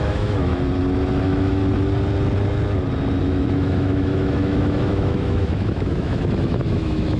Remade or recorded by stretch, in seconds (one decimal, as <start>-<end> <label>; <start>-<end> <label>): 0.0-0.5 remade; 0.5-1.2 recorded; 1.2-1.6 remade; 1.6-3.2 recorded; 3.2-7.2 remade